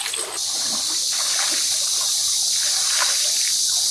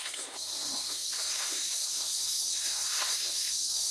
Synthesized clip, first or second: second